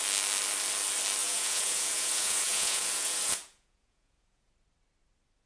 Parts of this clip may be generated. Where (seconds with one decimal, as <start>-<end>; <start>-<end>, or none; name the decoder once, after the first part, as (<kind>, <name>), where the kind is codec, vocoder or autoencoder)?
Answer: 1.2-4.5 (vocoder, Vocos)